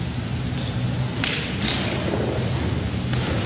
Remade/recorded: recorded